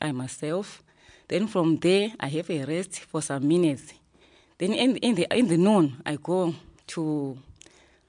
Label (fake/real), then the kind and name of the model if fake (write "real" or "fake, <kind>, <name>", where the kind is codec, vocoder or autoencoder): real